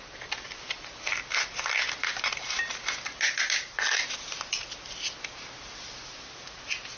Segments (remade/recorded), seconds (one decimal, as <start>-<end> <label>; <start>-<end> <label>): 0.0-7.0 recorded